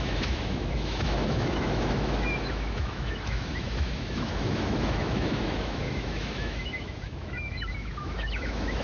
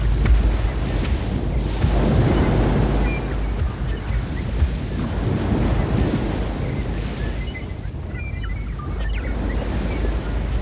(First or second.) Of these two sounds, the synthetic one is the first